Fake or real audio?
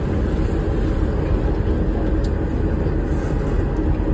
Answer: real